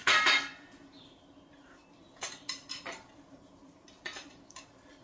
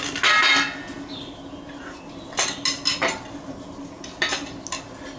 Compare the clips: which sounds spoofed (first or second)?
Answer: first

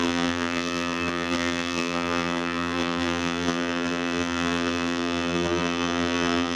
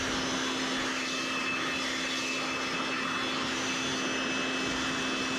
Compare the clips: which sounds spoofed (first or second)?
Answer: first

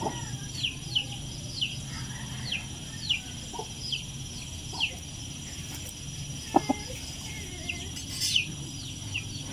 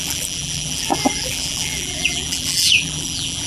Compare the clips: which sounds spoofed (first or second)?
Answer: second